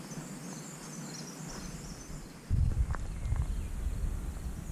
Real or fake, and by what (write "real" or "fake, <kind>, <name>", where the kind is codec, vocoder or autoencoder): real